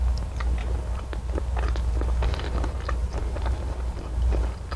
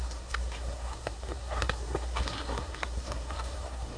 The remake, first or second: second